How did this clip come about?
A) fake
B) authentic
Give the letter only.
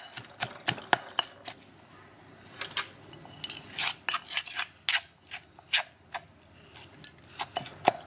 B